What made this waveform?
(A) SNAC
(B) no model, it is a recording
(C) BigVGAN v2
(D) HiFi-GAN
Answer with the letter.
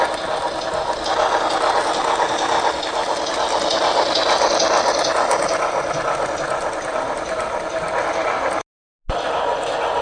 B